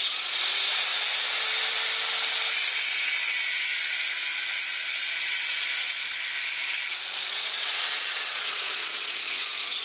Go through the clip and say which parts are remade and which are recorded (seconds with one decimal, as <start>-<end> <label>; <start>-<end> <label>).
0.0-0.9 remade; 0.9-5.1 recorded; 5.1-6.0 remade; 6.0-6.7 recorded; 6.7-9.8 remade

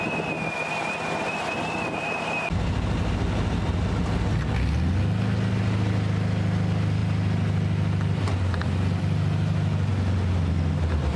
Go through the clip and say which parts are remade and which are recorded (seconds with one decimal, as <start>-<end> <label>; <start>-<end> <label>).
0.0-11.2 recorded

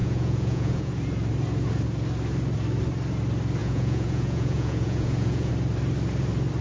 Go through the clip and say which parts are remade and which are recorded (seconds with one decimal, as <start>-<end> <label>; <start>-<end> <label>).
0.0-0.9 remade; 0.9-3.6 recorded; 3.6-5.5 remade; 5.5-6.6 recorded

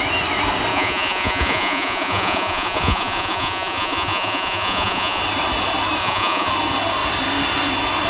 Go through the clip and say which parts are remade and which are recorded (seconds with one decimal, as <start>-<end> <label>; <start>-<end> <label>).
0.0-0.7 recorded; 0.7-5.2 remade; 5.2-6.0 recorded; 6.0-6.5 remade; 6.5-8.1 recorded